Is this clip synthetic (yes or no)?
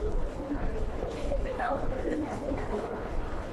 yes